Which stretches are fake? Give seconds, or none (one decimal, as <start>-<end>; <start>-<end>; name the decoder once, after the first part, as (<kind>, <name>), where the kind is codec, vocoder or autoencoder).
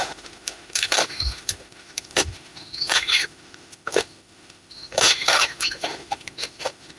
0.0-7.0 (autoencoder, DAC-VAE)